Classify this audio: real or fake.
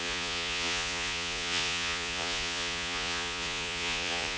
fake